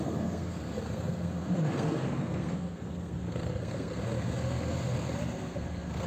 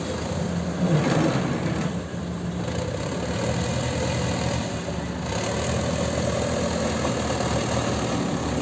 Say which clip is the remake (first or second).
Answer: first